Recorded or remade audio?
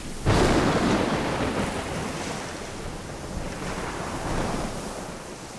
recorded